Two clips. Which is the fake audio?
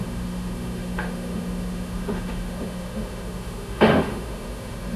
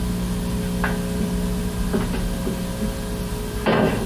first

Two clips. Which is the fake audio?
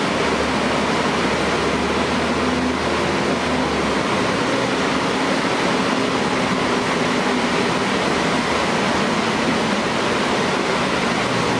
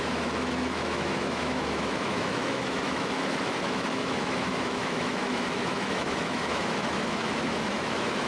second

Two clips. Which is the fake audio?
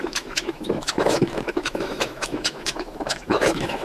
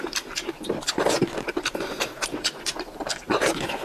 first